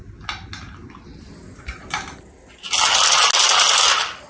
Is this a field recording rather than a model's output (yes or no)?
yes